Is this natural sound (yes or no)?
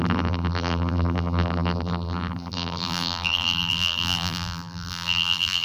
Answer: no